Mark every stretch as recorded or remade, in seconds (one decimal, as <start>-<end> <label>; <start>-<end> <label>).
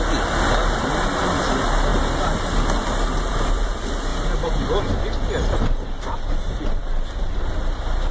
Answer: 0.0-8.1 recorded